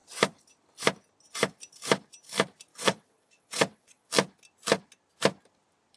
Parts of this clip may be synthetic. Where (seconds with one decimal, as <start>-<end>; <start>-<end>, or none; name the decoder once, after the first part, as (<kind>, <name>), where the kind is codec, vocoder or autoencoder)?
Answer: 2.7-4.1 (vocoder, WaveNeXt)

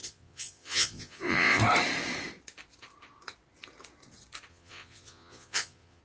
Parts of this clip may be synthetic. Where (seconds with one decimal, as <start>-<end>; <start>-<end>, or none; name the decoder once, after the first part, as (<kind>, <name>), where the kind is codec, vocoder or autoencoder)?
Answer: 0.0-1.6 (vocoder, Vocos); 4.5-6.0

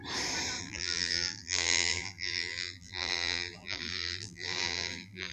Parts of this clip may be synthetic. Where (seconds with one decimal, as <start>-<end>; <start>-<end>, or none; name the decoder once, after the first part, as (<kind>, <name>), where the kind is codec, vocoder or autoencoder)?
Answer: 0.6-5.3 (vocoder, BigVGAN v2)

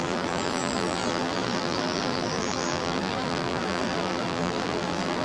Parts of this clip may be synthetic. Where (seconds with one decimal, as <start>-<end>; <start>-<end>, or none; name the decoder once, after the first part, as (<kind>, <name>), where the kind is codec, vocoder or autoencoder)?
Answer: 0.0-5.2 (vocoder, BigVGAN v2)

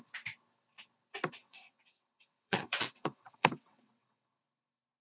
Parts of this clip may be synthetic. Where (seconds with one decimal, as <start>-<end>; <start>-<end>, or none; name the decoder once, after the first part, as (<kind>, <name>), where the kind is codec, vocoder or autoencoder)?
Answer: 1.4-4.4 (vocoder, WaveNeXt)

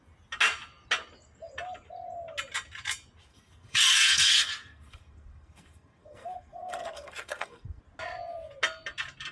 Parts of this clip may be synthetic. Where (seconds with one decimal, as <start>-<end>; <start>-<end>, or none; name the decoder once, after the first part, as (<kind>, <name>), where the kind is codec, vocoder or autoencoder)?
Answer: 3.3-7.8 (codec, SNAC)